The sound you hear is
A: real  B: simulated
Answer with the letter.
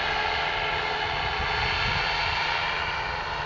A